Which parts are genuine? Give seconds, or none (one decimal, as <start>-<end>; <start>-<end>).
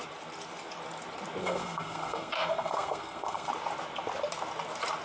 0.0-1.4; 3.5-5.0